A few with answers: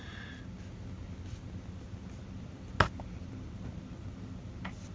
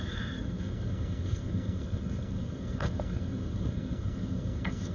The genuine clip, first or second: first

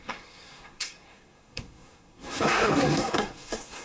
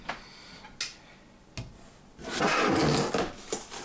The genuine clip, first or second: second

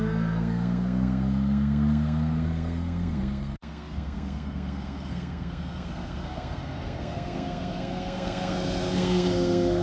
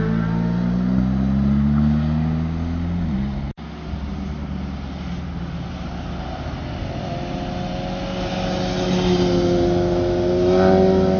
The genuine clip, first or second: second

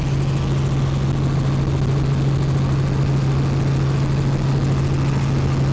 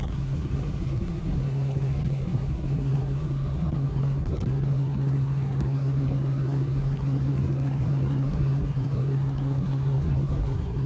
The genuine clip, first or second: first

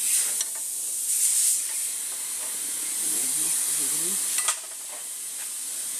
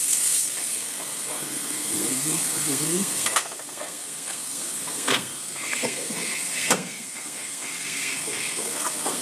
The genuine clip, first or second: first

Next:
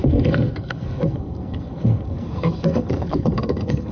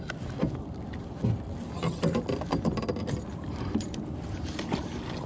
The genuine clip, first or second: second